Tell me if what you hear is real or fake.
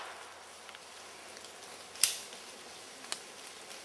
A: real